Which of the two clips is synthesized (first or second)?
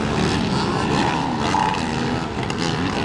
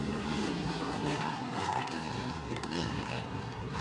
second